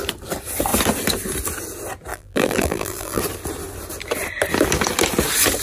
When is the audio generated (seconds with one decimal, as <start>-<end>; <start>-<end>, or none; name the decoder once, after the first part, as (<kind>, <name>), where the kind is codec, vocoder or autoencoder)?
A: 2.1-3.2 (vocoder, BigVGAN v2)